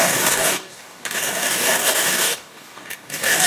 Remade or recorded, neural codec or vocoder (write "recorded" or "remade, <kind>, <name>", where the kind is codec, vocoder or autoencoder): remade, codec, DAC